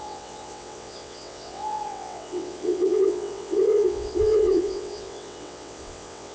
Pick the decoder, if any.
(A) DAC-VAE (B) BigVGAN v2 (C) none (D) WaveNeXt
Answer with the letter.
D